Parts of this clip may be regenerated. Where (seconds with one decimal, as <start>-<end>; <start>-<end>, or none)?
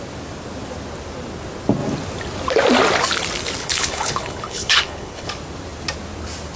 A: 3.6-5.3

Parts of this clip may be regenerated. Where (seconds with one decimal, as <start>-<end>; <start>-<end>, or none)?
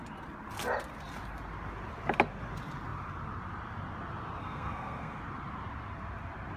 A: 4.4-5.2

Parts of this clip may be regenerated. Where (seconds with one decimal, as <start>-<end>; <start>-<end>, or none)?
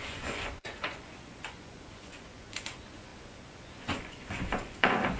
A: 0.0-5.2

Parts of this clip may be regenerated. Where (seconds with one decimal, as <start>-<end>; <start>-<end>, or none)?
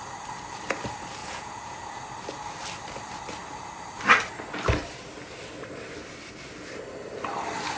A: 1.2-2.0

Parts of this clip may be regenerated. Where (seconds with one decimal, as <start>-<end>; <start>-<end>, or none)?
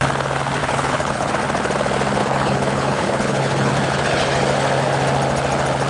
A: 0.6-1.3; 2.2-3.7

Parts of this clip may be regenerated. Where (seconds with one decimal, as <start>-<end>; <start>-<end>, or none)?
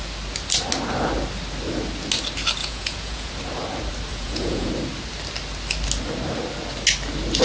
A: 2.6-3.3; 4.1-4.7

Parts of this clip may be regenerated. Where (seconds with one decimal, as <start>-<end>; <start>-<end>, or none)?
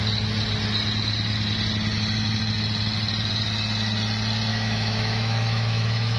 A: 4.5-6.2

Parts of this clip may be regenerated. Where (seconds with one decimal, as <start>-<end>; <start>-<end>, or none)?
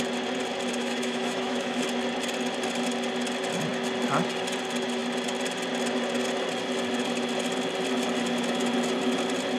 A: 0.8-1.8